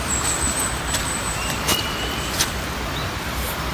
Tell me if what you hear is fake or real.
real